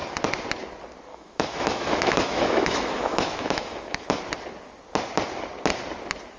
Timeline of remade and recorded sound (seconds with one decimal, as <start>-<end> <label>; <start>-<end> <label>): 0.0-1.1 recorded; 1.1-4.2 remade; 4.2-6.4 recorded